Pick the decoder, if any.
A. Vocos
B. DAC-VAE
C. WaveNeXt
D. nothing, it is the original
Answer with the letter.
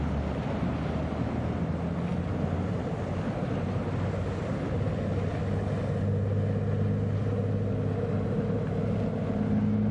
D